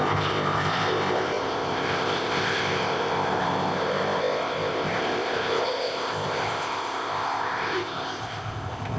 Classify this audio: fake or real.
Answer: fake